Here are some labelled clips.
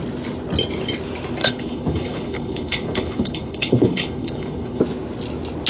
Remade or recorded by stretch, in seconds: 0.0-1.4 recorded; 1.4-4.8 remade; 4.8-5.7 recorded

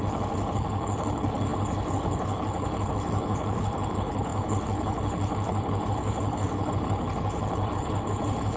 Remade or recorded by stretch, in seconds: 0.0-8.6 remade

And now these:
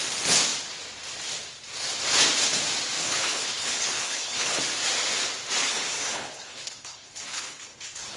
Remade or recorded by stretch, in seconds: 0.0-3.0 recorded; 3.0-4.6 remade; 4.6-5.6 recorded; 5.6-8.2 remade

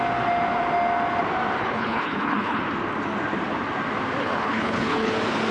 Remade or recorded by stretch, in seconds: 0.0-1.6 recorded; 1.6-2.6 remade; 2.6-4.2 recorded; 4.2-5.1 remade; 5.1-5.5 recorded

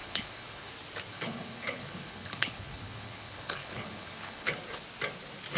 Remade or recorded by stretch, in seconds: 0.0-0.7 remade; 0.7-1.1 recorded; 1.1-4.5 remade; 4.5-5.6 recorded